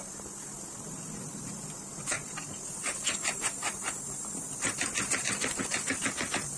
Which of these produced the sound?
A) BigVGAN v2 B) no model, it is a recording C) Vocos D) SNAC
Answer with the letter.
B